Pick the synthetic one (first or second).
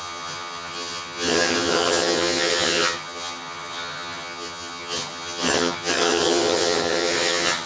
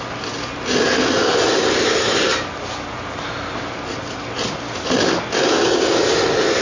first